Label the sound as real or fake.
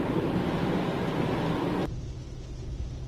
real